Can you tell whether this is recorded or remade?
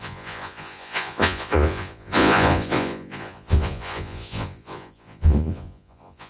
remade